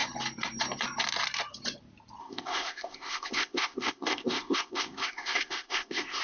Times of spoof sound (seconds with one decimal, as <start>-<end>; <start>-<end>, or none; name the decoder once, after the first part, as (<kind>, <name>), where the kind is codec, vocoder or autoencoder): 2.2-6.2 (codec, ZipCodec)